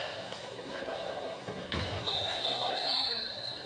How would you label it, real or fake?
fake